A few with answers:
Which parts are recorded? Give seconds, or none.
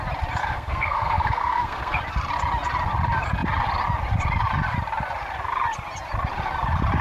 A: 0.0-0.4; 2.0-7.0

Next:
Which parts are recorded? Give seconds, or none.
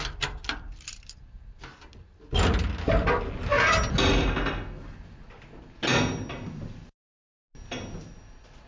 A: 0.0-8.7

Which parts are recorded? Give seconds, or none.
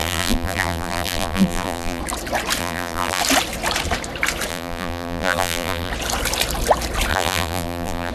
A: 2.0-2.6; 3.2-4.5; 5.9-7.1